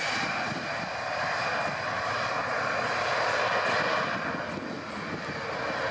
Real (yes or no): yes